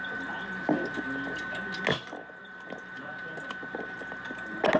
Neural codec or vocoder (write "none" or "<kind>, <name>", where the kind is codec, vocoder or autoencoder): none